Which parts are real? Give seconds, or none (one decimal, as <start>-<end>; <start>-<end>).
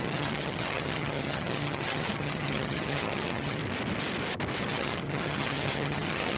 3.6-4.6